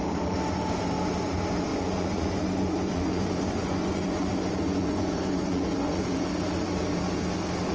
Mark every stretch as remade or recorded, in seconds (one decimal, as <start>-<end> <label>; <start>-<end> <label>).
0.0-1.7 recorded; 1.7-6.3 remade; 6.3-7.7 recorded